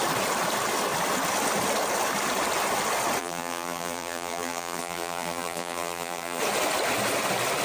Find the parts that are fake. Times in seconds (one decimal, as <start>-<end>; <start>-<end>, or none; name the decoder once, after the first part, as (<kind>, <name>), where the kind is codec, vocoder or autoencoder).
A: 3.2-6.4 (vocoder, BigVGAN v2)